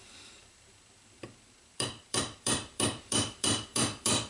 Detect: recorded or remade remade